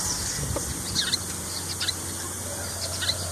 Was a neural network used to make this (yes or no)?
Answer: no